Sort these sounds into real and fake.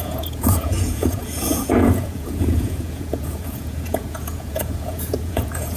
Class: fake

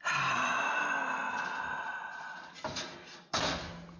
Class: real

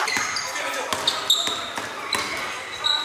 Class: real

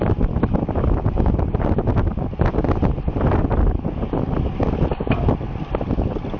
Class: real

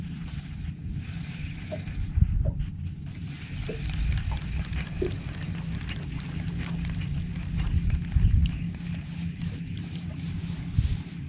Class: real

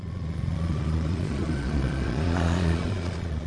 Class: fake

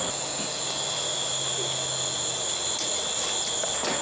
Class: real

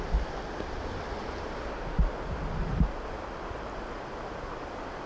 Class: real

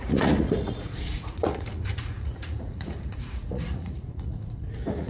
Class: fake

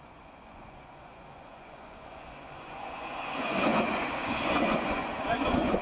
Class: fake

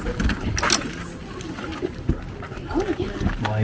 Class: real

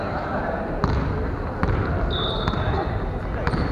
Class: real